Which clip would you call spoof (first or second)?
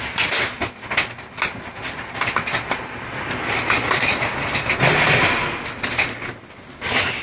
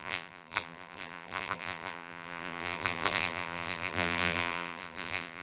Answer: second